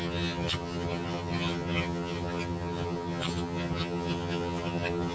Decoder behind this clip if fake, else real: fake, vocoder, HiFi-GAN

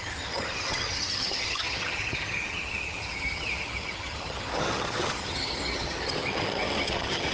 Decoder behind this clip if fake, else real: fake, vocoder, HiFi-GAN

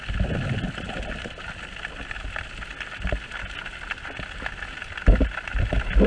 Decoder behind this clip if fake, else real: real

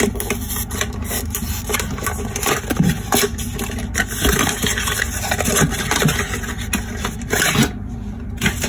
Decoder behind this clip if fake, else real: real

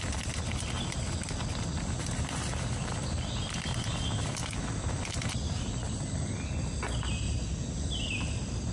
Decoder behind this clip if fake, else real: real